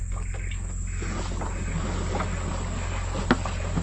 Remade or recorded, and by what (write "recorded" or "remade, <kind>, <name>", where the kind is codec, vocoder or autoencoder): recorded